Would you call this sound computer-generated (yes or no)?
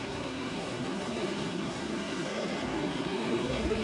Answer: yes